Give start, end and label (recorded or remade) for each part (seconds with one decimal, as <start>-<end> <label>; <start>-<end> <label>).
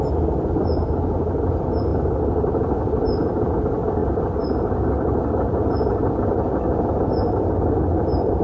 0.0-8.4 recorded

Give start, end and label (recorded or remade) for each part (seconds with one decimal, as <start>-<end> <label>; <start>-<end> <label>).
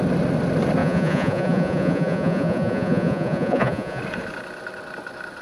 0.0-0.8 recorded; 0.8-4.0 remade; 4.0-5.4 recorded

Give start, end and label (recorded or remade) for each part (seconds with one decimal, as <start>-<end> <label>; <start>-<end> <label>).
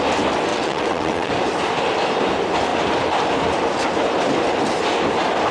0.0-0.5 recorded; 0.5-1.3 remade; 1.3-5.5 recorded